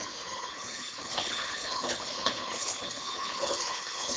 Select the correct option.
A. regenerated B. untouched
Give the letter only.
A